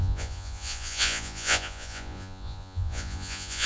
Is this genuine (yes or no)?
no